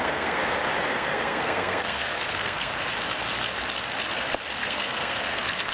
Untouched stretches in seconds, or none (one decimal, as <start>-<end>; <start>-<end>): 0.4-0.9; 2.7-4.5